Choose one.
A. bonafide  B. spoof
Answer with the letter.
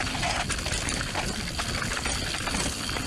A